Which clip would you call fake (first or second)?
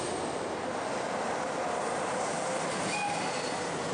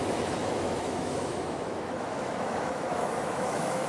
second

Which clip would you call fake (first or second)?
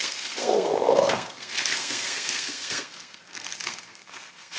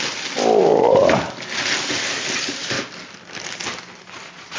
first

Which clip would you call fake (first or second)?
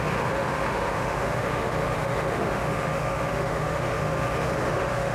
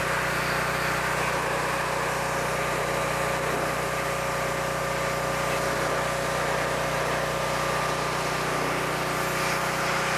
first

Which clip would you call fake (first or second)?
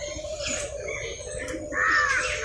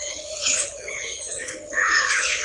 second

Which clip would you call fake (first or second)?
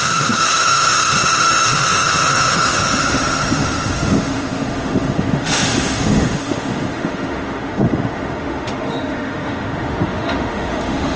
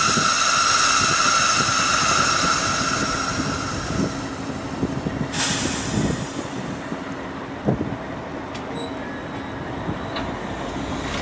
first